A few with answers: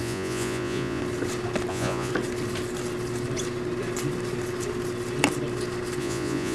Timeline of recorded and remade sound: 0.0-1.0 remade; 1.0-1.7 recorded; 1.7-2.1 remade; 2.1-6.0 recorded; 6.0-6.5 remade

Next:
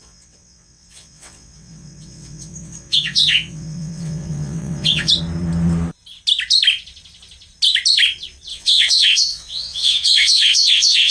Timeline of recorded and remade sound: 0.0-5.1 remade; 5.1-8.5 recorded; 8.5-11.1 remade

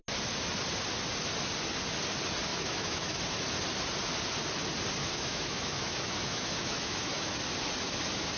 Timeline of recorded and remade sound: 0.0-2.5 recorded; 2.5-3.2 remade; 3.2-5.0 recorded; 5.0-7.4 remade; 7.4-8.4 recorded

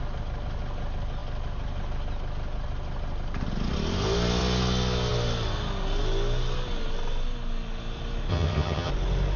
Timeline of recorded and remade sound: 0.0-8.3 recorded; 8.3-8.9 remade; 8.9-9.4 recorded

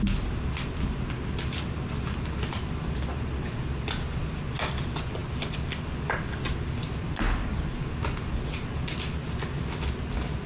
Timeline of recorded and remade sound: 0.0-10.5 recorded

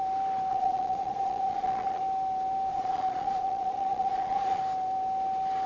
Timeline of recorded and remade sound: 0.0-0.5 recorded; 0.5-2.0 remade; 2.0-2.7 recorded; 2.7-4.6 remade; 4.6-5.7 recorded